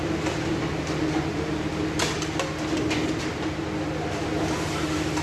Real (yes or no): yes